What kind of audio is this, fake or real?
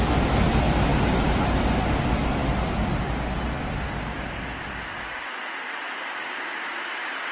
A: real